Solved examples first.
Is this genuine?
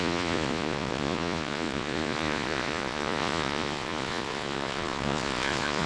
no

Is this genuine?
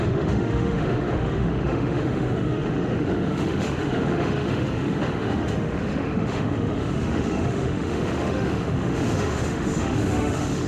no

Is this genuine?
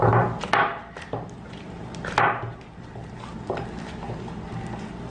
yes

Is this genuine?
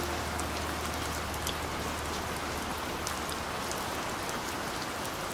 yes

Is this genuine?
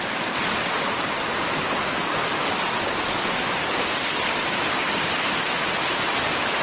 yes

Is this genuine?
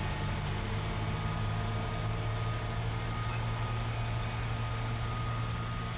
yes